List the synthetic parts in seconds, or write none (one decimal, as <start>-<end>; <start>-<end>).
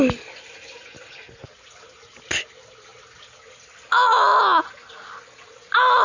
none